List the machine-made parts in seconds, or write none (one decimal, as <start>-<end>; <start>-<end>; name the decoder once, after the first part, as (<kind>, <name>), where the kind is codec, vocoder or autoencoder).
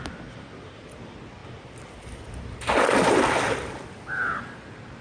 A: none